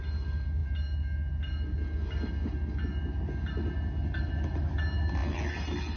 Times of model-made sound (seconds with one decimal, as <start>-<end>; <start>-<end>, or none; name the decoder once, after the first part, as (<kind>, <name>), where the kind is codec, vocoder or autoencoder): none